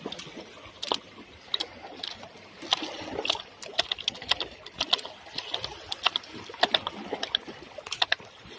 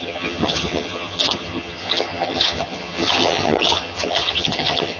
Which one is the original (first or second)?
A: first